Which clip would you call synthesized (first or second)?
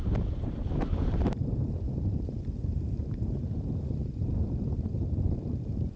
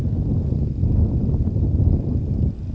first